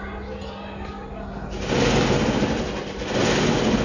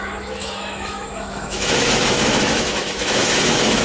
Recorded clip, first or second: first